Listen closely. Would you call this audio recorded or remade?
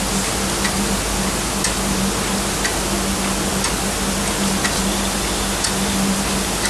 recorded